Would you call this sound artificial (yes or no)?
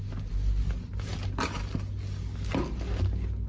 no